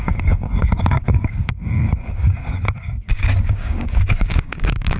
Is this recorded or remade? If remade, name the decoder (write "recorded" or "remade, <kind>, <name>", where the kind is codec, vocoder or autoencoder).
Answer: remade, codec, DAC